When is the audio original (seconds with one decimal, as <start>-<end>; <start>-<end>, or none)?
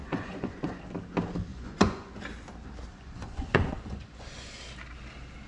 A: 0.8-1.5; 2.1-2.9; 4.6-5.5